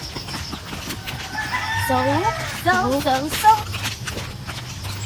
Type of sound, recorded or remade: recorded